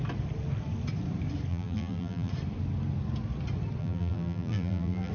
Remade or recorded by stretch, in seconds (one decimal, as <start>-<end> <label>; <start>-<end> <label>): 0.0-1.5 recorded; 1.5-2.3 remade; 2.3-3.8 recorded; 3.8-5.1 remade